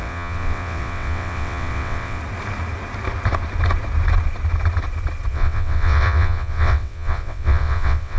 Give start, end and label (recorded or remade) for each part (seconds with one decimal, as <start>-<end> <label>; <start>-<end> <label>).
0.0-2.2 remade; 2.2-5.3 recorded; 5.3-8.2 remade